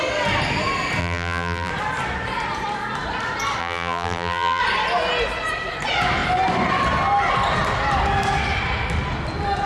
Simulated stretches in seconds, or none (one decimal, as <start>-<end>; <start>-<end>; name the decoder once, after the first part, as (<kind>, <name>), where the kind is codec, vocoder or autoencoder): 1.0-1.7 (vocoder, BigVGAN v2); 3.6-4.6